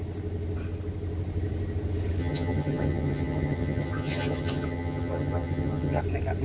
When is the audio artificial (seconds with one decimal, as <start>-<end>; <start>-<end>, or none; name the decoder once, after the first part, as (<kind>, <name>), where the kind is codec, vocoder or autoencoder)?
2.2-6.0 (vocoder, HiFi-GAN)